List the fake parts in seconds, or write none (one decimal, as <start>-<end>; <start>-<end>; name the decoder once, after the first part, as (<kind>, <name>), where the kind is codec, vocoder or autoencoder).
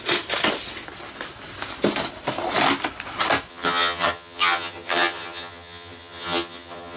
3.5-7.0 (vocoder, HiFi-GAN)